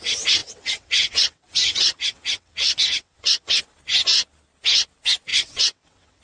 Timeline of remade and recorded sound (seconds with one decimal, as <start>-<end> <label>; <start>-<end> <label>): 0.0-0.4 recorded; 0.4-3.6 remade; 3.6-5.3 recorded; 5.3-6.2 remade